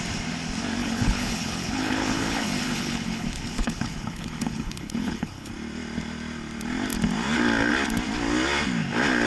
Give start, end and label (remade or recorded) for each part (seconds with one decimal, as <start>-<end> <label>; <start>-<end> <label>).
0.0-0.8 recorded; 0.8-5.5 remade; 5.5-9.3 recorded